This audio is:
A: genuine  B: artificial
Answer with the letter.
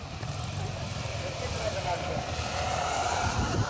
B